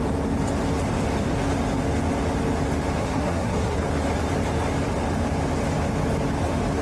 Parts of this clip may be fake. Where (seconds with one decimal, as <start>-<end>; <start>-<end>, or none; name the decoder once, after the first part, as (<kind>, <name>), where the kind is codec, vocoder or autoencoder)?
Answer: 3.0-3.8 (codec, SNAC)